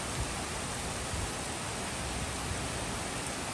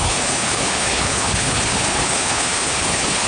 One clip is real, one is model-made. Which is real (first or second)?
first